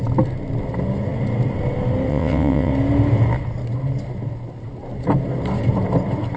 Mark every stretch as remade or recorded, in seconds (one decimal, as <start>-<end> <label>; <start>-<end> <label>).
0.0-2.1 recorded; 2.1-2.7 remade; 2.7-6.4 recorded